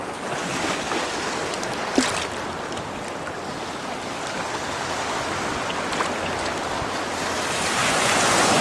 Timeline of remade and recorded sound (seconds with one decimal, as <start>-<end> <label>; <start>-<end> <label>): 0.0-7.8 recorded; 7.8-8.6 remade